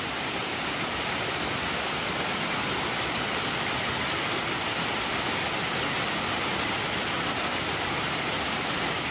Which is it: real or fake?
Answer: real